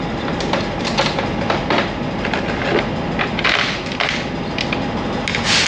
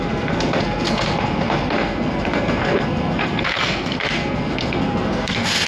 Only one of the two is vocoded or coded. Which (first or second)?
second